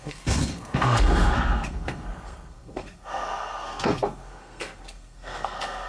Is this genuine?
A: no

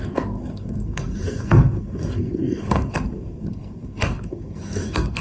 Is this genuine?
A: no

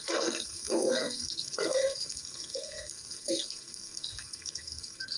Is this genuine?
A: no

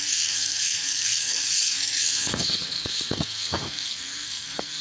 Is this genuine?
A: no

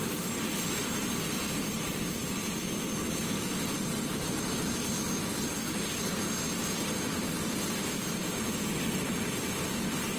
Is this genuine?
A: yes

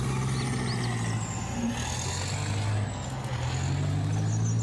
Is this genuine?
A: yes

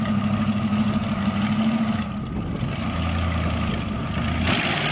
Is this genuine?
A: yes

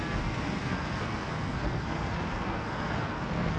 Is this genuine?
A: no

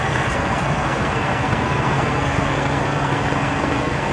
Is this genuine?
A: no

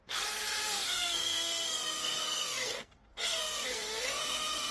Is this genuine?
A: no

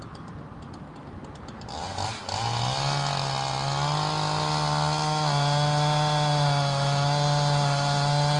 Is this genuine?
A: yes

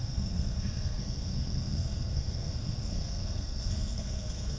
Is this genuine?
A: no